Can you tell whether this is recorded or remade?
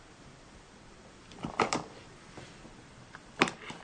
remade